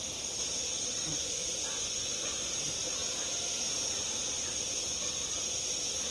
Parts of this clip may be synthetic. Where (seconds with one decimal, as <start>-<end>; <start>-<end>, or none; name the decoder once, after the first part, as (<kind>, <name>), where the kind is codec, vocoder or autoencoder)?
1.1-2.5 (vocoder, Vocos)